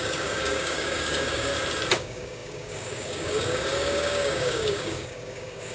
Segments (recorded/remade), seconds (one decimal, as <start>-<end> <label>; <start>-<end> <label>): 0.0-1.5 remade; 1.5-2.0 recorded; 2.0-5.7 remade